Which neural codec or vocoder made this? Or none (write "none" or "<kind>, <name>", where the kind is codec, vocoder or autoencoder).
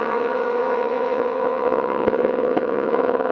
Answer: vocoder, WaveNeXt